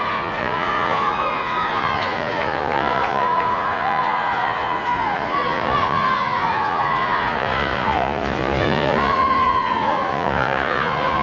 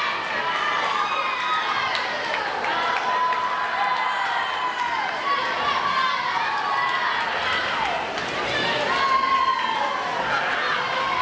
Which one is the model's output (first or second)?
first